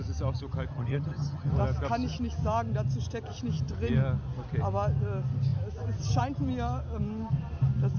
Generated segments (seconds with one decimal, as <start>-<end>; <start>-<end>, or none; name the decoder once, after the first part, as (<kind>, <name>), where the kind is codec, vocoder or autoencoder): 0.7-1.5 (vocoder, HiFi-GAN)